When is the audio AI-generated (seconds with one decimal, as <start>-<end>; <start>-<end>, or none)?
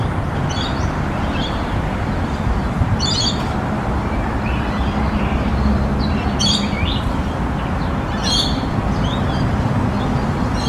0.0-5.5; 10.2-10.7